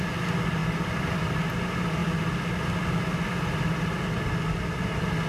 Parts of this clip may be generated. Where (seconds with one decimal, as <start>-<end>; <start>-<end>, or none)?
0.6-1.4